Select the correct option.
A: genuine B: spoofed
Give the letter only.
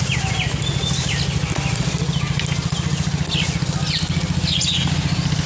A